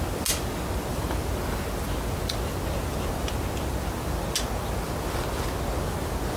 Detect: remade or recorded recorded